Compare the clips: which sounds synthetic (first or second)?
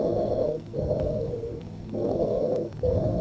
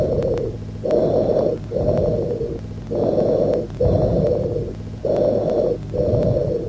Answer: first